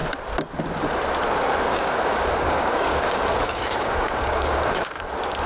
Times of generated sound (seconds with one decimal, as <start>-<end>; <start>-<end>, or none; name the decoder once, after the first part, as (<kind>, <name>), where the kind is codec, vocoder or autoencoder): 1.7-5.0 (codec, DAC)